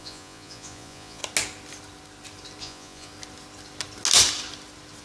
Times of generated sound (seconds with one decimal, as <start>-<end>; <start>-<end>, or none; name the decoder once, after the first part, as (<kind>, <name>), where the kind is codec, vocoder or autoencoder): 0.0-1.2 (vocoder, Vocos); 2.6-3.1